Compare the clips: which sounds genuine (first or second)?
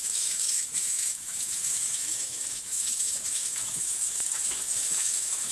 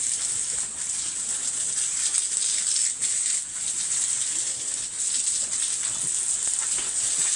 second